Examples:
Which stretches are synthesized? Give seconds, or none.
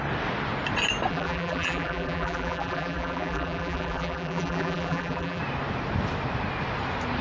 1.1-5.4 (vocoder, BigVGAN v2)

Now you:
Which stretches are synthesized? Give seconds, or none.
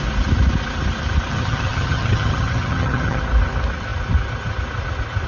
1.3-3.2 (vocoder, HiFi-GAN)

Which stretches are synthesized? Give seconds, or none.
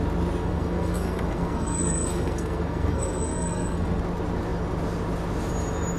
0.4-4.0 (codec, SNAC)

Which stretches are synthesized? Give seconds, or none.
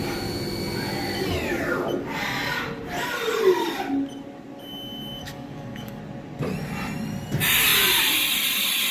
5.2-6.0 (codec, DAC)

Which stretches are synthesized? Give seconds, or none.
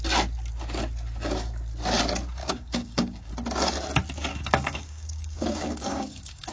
2.4-3.3 (codec, DAC); 4.3-6.5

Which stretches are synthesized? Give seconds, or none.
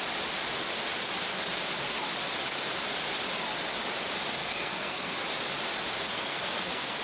4.4-5.2 (codec, SNAC); 6.1-7.0